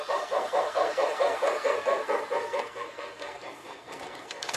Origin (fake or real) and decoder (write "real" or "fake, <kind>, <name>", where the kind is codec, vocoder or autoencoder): fake, codec, SNAC